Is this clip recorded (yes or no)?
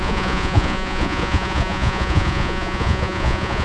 no